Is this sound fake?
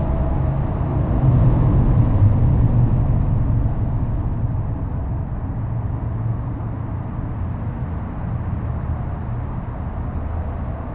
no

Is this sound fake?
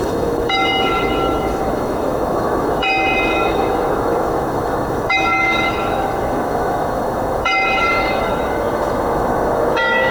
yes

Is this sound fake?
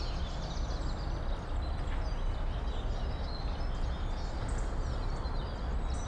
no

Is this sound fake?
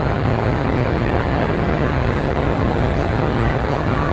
yes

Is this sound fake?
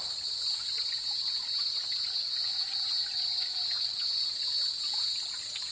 no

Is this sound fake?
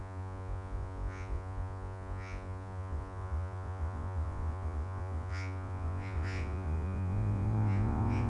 yes